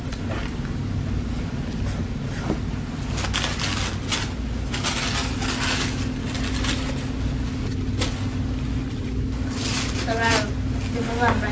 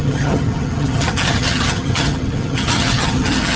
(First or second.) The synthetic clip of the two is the second